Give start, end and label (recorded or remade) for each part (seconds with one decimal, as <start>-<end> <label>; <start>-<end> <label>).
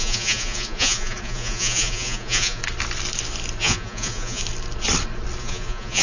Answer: 0.0-2.6 remade; 2.6-3.6 recorded; 3.6-4.4 remade; 4.4-5.4 recorded; 5.4-6.0 remade